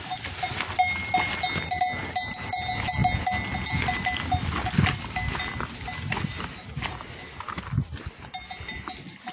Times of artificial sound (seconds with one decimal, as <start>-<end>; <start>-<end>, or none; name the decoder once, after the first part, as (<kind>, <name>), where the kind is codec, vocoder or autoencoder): none